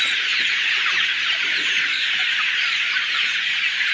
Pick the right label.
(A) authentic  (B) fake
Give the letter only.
B